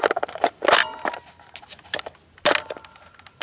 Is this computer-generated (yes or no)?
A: no